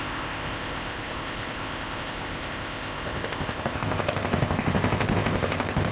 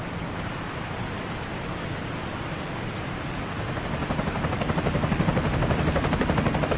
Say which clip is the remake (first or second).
first